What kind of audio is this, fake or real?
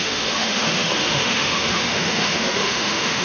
fake